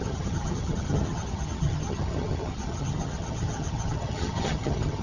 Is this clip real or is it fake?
fake